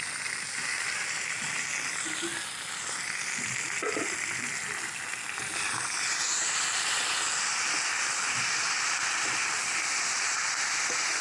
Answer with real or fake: real